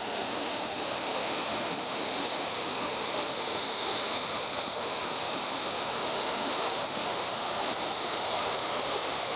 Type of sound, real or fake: fake